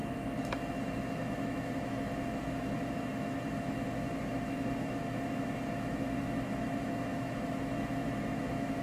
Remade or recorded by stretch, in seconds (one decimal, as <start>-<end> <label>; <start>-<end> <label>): 0.0-8.8 remade